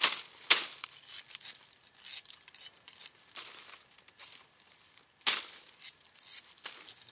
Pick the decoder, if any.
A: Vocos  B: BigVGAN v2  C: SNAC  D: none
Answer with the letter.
D